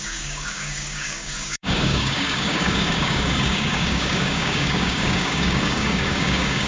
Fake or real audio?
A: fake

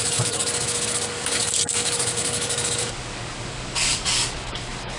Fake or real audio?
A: fake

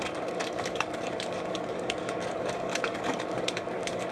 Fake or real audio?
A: fake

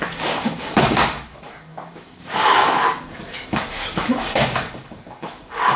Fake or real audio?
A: fake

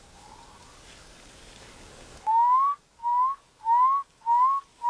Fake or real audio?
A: fake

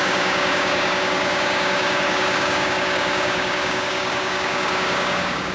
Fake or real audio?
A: fake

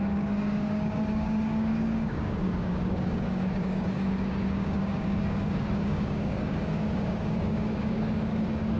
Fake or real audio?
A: fake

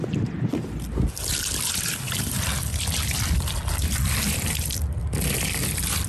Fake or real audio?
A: real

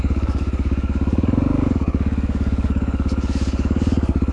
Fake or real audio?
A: fake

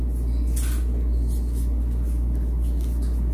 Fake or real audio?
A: real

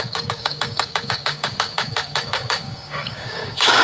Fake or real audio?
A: fake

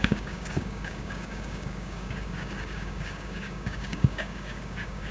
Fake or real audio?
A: fake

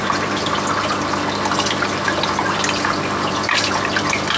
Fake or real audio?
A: real